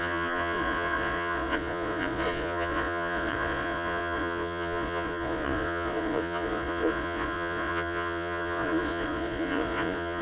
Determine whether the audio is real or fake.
fake